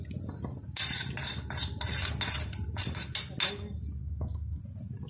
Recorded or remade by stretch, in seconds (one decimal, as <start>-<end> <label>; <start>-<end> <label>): 0.0-4.0 recorded; 4.0-4.6 remade; 4.6-5.1 recorded